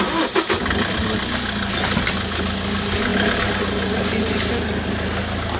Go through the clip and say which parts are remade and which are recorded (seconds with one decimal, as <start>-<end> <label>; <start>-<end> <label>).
0.0-5.6 recorded